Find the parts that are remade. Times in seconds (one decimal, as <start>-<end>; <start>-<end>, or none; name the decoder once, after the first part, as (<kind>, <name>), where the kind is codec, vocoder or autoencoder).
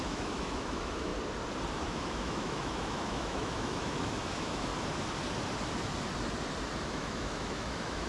0.0-1.1 (autoencoder, DAC-VAE); 1.7-4.7; 6.8-8.1